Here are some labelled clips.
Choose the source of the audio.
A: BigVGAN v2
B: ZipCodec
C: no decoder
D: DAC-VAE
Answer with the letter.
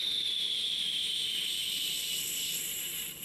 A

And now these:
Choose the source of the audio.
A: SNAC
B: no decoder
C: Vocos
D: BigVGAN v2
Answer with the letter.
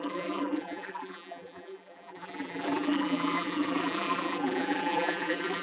D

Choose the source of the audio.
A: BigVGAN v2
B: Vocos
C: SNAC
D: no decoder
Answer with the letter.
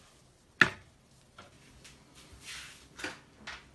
D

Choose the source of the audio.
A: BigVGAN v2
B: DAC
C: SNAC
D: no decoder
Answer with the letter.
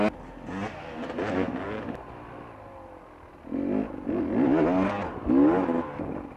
D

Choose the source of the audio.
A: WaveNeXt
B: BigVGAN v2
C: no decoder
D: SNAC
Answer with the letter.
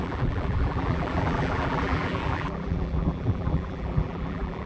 B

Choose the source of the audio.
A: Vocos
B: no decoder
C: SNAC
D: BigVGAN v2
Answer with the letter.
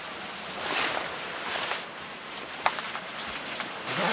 B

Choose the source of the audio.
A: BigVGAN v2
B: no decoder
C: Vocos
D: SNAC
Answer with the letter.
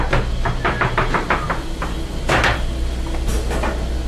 B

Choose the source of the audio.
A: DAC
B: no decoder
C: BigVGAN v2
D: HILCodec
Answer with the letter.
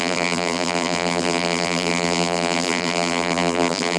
C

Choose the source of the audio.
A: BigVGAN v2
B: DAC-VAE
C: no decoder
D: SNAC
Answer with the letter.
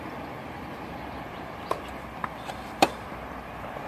A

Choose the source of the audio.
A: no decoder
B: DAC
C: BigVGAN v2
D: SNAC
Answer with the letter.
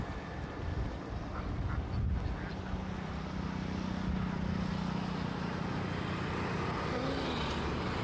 A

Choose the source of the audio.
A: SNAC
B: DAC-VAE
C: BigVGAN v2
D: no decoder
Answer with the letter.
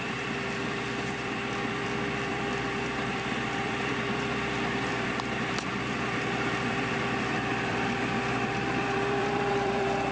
C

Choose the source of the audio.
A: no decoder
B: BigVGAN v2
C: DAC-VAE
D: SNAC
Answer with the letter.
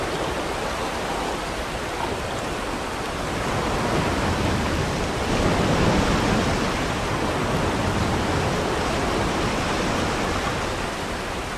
A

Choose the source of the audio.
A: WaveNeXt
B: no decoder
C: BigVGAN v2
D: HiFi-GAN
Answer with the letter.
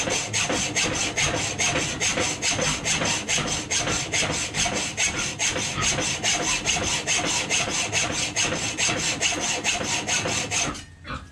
B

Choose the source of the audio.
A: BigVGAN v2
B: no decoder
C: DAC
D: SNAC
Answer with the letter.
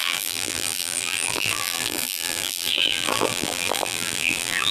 A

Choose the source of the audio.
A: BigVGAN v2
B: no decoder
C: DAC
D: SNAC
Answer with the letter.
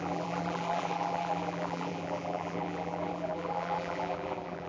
A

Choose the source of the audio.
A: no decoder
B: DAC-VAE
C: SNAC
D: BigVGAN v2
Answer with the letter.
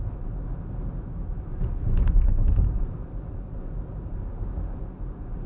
A